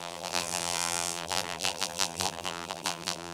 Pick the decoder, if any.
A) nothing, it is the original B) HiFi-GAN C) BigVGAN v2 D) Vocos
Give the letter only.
C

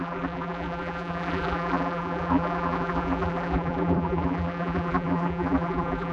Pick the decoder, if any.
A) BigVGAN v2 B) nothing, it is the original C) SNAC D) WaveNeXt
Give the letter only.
A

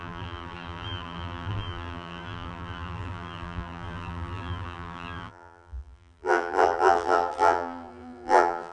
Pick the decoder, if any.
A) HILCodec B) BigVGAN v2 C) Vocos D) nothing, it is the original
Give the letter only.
B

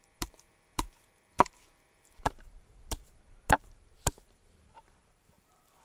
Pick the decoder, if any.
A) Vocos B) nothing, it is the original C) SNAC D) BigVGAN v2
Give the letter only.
D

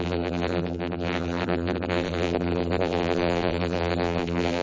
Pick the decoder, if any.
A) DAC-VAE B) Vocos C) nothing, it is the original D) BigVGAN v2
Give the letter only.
D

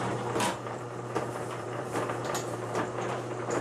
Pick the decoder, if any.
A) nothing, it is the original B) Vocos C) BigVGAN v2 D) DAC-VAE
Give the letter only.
C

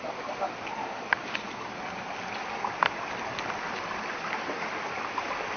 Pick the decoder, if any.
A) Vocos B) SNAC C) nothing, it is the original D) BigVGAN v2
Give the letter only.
C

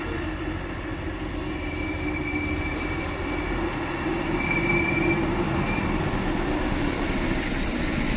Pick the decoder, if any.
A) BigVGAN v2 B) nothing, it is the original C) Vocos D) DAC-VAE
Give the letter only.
A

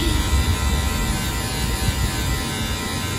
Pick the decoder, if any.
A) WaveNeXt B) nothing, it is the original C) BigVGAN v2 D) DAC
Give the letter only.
C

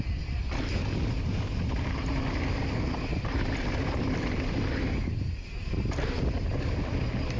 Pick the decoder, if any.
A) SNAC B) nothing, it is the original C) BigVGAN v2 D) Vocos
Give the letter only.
B